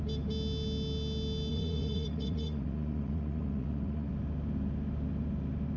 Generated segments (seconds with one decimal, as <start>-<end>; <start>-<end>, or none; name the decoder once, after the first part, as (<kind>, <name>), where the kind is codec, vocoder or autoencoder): 1.5-4.1 (vocoder, Vocos)